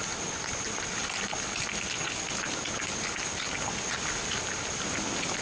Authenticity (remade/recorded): recorded